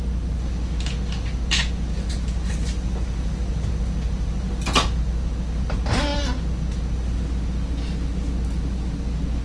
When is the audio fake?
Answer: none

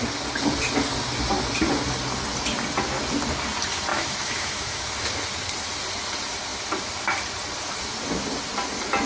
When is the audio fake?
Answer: 3.9-4.9

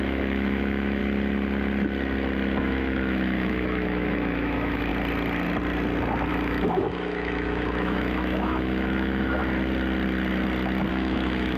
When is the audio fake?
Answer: 0.0-1.0; 2.6-4.9; 6.3-9.4; 10.9-11.6

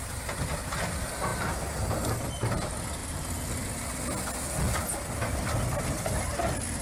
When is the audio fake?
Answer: none

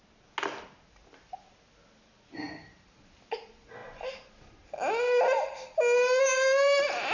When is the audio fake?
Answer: none